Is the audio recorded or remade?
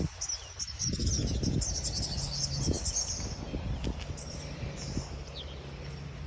recorded